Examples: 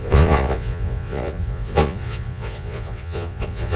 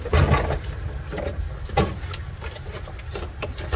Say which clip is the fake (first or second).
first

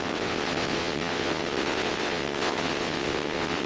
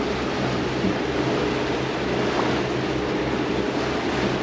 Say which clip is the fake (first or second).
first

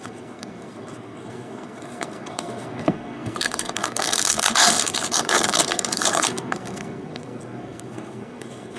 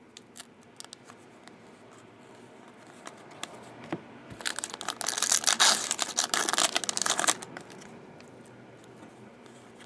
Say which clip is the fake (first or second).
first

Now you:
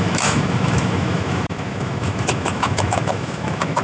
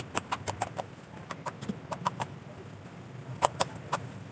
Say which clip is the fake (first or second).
first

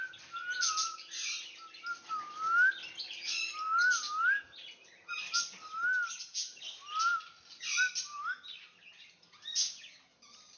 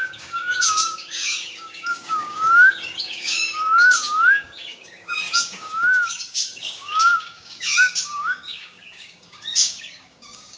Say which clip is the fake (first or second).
second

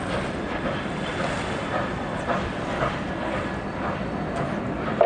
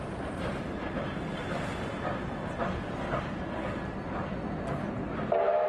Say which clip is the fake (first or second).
first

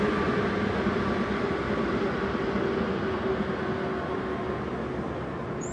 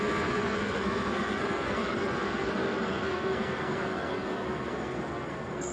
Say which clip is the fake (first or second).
second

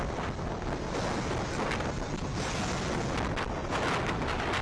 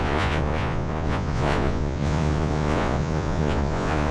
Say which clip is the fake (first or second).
second